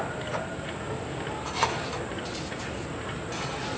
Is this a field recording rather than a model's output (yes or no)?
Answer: yes